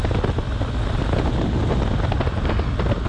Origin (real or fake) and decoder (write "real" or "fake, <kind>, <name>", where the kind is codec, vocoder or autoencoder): real